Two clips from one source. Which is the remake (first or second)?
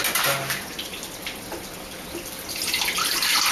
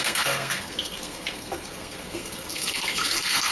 second